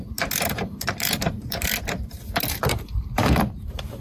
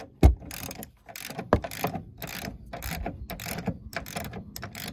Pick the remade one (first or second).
first